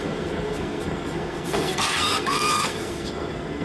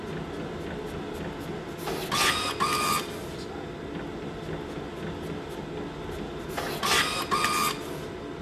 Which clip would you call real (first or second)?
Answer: second